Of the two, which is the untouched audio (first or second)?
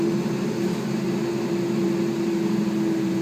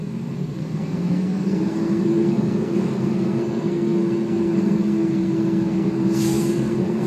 first